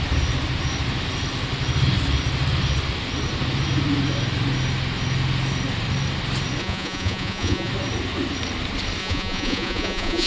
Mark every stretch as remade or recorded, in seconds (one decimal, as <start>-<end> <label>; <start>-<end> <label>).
0.0-6.6 recorded; 6.6-7.7 remade; 7.7-9.0 recorded; 9.0-10.3 remade